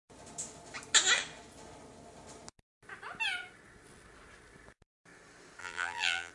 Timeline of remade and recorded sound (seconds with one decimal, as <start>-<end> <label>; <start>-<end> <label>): 0.0-5.6 recorded; 5.6-6.3 remade

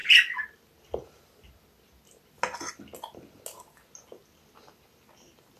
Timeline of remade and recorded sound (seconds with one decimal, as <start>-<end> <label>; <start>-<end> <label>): 0.0-5.6 recorded